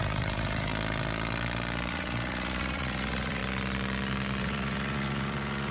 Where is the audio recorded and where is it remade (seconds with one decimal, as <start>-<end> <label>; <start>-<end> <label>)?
0.0-0.7 remade; 0.7-1.9 recorded; 1.9-3.4 remade; 3.4-4.4 recorded; 4.4-5.7 remade